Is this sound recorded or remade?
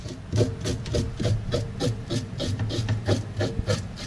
recorded